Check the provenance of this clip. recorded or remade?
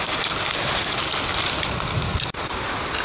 recorded